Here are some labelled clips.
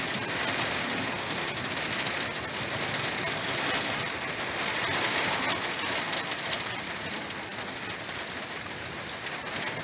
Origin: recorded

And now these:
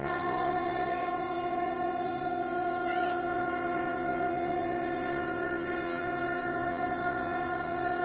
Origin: remade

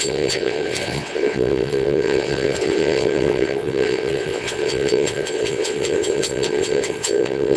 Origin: remade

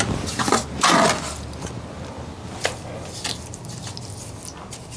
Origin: recorded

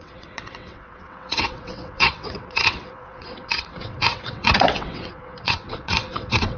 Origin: remade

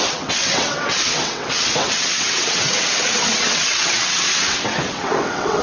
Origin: remade